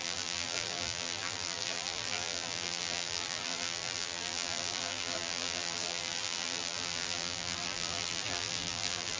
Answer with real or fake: fake